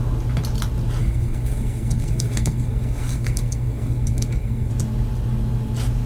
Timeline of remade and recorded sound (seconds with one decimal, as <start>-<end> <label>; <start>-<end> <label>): 0.0-1.0 recorded; 1.0-4.7 remade; 4.7-6.1 recorded